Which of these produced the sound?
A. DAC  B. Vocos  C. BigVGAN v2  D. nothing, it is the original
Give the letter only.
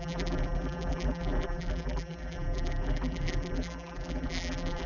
C